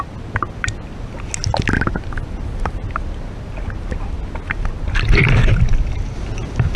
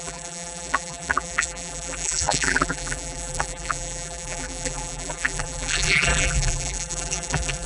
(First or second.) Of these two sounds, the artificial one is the second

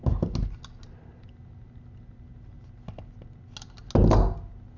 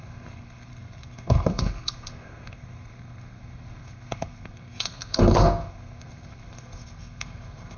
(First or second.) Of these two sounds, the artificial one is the second